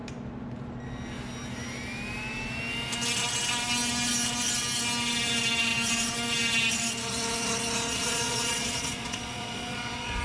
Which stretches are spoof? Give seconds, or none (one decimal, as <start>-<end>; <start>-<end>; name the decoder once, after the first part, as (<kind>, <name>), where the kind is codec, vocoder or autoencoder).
7.9-10.2 (vocoder, Vocos)